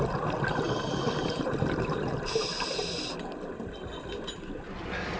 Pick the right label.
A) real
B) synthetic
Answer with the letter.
A